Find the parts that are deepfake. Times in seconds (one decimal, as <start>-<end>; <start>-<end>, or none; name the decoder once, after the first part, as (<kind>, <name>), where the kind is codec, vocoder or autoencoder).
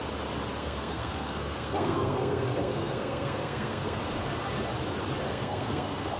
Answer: 0.6-4.0 (codec, SNAC); 5.3-6.2